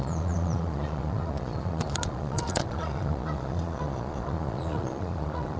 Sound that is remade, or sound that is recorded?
remade